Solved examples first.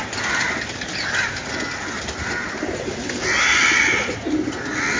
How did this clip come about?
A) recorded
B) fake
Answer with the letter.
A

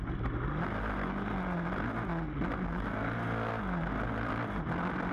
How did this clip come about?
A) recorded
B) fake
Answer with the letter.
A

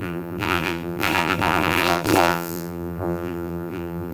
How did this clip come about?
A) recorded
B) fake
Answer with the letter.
B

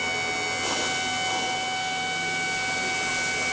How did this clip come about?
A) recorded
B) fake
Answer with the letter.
A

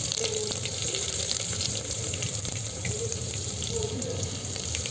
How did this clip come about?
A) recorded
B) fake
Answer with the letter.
B